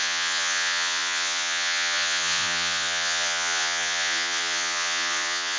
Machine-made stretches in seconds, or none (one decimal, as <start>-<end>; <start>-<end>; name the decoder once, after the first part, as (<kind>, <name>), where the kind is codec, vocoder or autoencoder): 0.0-5.6 (vocoder, Vocos)